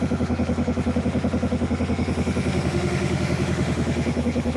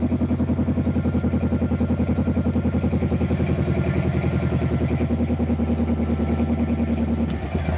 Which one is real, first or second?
second